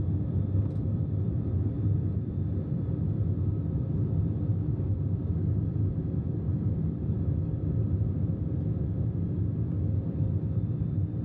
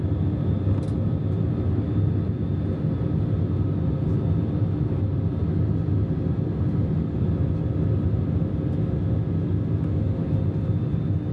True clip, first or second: second